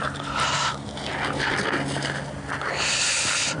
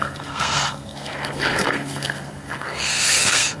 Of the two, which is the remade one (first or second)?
second